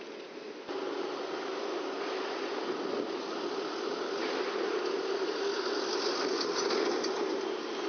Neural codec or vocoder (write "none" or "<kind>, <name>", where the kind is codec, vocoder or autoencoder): none